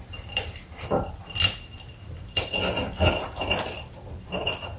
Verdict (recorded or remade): recorded